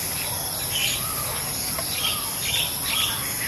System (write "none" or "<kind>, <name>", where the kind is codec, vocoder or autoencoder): none